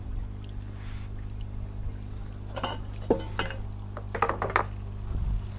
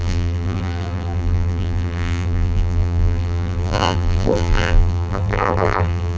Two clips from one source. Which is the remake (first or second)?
second